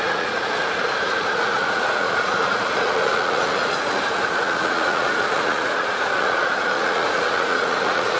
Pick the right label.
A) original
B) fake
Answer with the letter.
B